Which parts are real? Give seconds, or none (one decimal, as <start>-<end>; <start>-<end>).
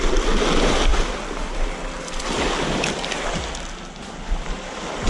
0.0-5.1